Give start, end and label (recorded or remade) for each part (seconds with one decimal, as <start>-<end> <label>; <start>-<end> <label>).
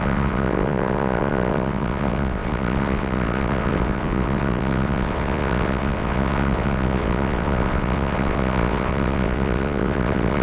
0.0-10.4 remade